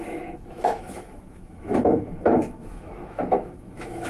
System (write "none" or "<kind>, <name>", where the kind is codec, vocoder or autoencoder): autoencoder, DAC-VAE